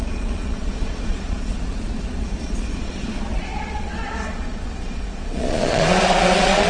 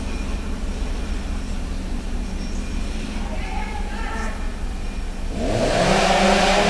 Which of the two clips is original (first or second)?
second